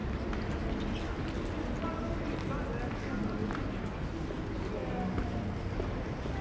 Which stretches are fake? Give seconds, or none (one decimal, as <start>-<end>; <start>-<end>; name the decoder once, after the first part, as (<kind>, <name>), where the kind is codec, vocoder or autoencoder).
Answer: none